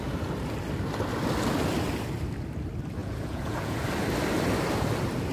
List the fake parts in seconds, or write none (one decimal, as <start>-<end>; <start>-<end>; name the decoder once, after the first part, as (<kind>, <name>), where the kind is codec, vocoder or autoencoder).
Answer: 3.0-3.9 (vocoder, Vocos)